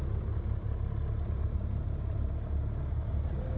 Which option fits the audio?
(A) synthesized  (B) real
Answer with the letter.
B